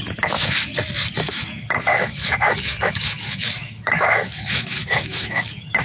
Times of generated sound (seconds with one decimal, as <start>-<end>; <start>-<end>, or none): 0.0-0.7; 1.2-5.8

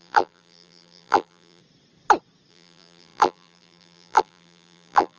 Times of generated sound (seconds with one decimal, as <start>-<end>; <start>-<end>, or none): 0.0-1.6; 2.5-5.2

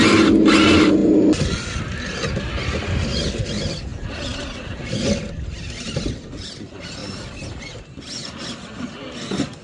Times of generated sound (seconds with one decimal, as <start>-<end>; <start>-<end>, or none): none

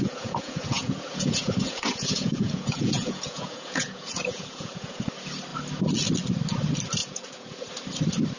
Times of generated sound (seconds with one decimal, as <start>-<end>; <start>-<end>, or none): 0.0-5.0; 7.0-7.7

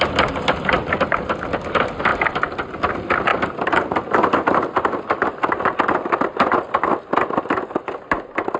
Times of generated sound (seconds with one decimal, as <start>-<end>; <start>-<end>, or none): none

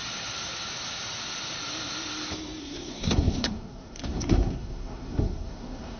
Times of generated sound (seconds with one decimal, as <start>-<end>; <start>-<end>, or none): 2.6-6.0

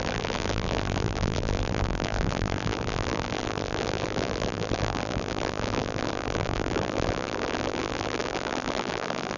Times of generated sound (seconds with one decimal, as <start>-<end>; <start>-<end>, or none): 0.0-9.4